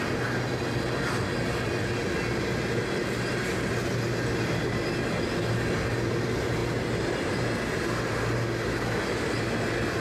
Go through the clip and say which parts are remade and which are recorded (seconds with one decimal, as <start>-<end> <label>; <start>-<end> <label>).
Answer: 0.0-10.0 recorded